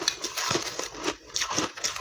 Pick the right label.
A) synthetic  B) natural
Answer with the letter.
B